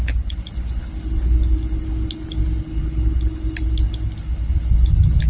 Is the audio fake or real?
real